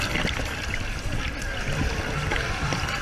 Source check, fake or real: fake